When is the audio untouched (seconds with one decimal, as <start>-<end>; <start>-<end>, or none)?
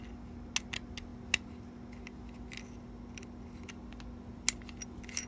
0.0-5.3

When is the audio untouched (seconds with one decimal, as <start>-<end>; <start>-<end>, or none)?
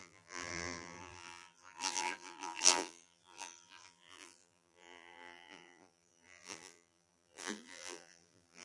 none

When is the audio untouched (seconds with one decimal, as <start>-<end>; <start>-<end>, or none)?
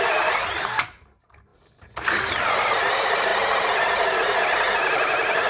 1.5-2.2; 3.3-4.8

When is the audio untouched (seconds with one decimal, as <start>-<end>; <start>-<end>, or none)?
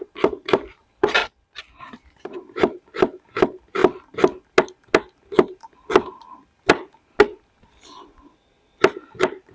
1.2-1.8; 3.8-9.1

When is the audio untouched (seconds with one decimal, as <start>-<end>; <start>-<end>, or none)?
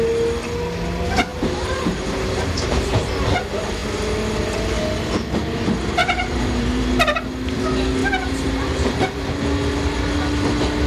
0.0-1.3; 3.3-6.0; 6.8-8.0; 9.3-10.9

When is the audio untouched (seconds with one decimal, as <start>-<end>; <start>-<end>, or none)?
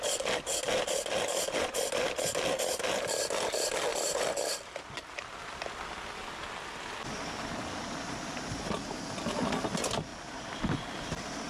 0.0-3.9; 6.0-10.1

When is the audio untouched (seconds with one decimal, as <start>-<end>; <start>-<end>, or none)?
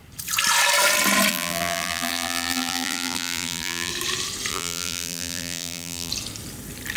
0.0-1.3; 3.9-4.5; 6.1-7.0